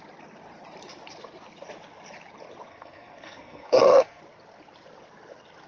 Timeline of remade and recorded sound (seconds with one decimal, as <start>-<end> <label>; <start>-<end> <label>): 0.0-2.7 recorded; 2.7-4.2 remade; 4.2-5.7 recorded